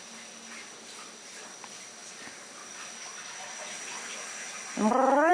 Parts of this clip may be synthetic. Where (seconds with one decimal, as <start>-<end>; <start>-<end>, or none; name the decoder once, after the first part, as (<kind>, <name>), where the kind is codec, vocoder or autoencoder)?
none